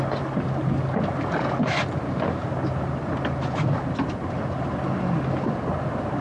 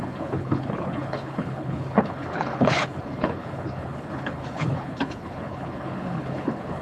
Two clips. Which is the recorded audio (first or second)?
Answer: first